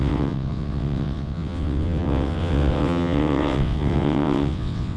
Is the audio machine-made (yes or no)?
yes